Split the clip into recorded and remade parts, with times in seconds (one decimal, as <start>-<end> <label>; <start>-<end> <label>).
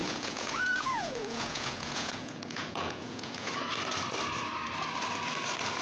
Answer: 0.0-3.5 remade; 3.5-5.8 recorded